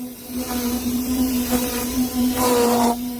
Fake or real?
fake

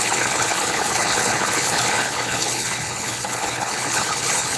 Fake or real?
fake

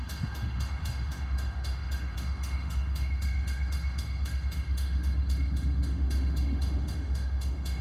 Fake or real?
fake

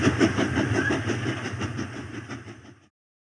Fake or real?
real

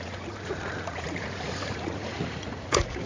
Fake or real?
fake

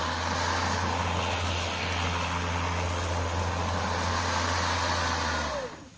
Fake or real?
real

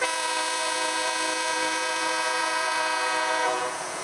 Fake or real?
fake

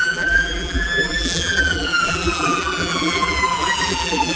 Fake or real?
fake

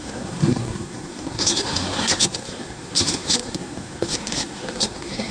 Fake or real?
fake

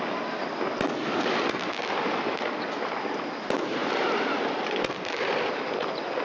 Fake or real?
real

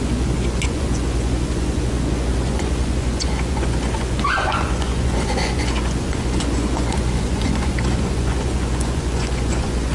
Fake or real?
fake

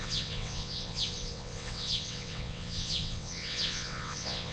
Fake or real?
fake